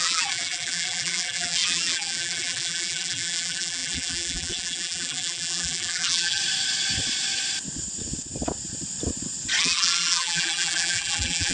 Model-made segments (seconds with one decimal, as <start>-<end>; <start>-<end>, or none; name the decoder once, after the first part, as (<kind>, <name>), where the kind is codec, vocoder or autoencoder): 0.0-6.4 (vocoder, BigVGAN v2); 9.6-11.5